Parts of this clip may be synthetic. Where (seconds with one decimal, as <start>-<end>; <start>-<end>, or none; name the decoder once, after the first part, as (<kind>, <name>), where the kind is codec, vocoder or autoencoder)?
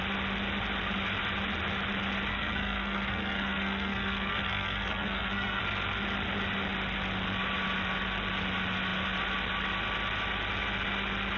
2.3-5.6 (codec, SNAC)